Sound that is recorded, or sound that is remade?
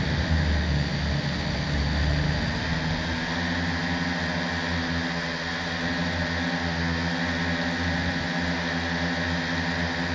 recorded